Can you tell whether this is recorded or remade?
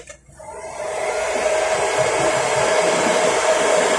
recorded